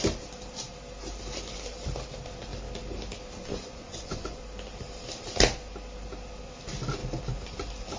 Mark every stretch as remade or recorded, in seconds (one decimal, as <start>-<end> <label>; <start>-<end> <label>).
0.0-3.5 recorded; 3.5-4.4 remade; 4.4-8.0 recorded